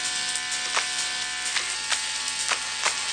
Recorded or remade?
remade